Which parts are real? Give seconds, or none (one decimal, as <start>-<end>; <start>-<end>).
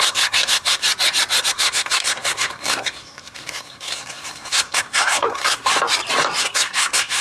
0.8-1.5; 5.7-6.4